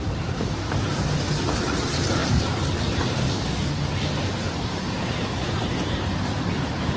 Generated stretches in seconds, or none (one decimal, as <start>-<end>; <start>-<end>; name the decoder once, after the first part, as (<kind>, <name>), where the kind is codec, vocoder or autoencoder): 0.0-2.2 (vocoder, BigVGAN v2); 4.2-7.0